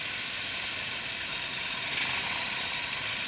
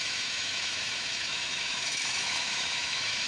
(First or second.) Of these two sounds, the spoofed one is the second